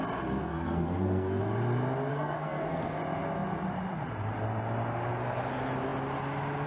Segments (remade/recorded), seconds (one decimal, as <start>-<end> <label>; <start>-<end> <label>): 0.0-0.4 recorded; 0.4-1.4 remade; 1.4-2.1 recorded; 2.1-3.0 remade; 3.0-6.7 recorded